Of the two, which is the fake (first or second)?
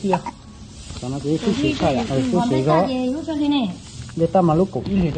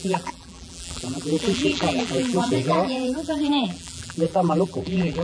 second